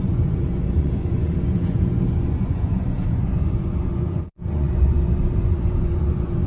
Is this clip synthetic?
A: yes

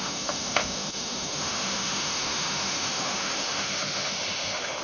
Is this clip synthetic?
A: yes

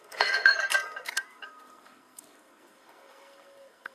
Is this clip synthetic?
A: yes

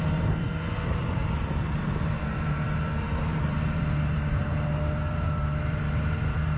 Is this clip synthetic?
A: yes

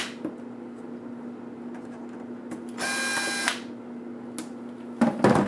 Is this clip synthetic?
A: no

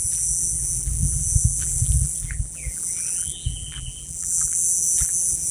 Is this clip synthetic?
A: yes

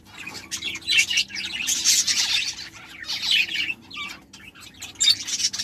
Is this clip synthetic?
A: no